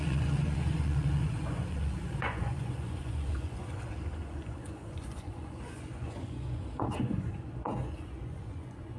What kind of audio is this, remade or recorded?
remade